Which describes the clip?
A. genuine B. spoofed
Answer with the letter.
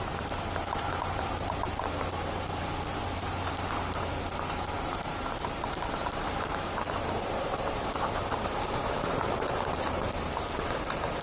B